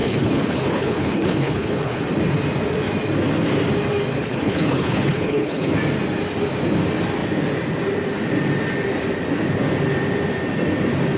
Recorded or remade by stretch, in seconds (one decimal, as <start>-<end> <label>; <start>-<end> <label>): 0.0-2.0 remade; 2.0-4.1 recorded; 4.1-5.7 remade; 5.7-11.2 recorded